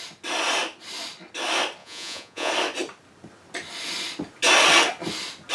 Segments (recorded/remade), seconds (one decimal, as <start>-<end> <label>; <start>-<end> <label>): 0.0-1.8 recorded; 1.8-2.5 remade; 2.5-5.5 recorded